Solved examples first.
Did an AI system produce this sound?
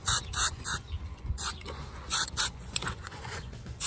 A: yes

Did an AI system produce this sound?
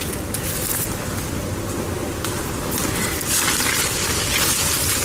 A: no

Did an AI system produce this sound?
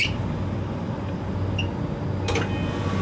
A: no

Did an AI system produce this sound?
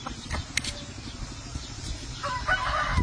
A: no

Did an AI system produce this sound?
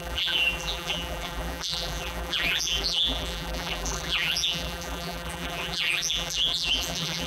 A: yes